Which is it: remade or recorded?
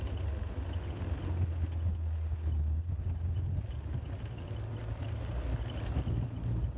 recorded